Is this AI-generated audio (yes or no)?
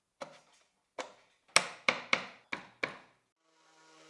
no